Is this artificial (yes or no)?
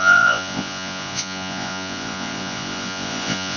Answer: yes